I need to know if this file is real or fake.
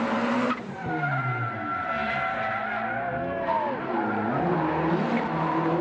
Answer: real